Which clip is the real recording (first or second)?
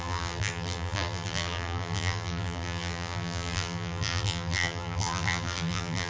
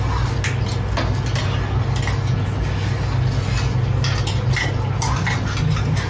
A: second